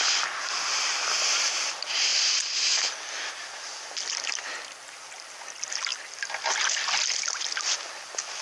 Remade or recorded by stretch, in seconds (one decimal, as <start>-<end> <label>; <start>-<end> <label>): 0.0-8.4 recorded